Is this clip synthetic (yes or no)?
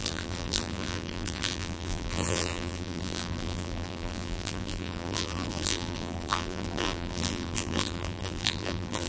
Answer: yes